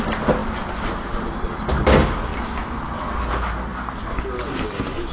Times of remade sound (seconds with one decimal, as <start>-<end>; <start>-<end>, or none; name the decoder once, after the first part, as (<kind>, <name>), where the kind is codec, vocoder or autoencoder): 0.4-1.5 (vocoder, BigVGAN v2); 2.3-3.2